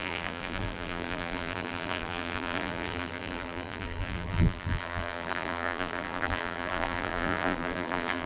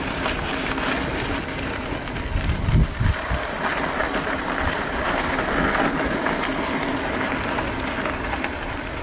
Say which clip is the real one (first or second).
second